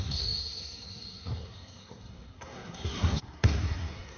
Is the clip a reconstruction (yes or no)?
yes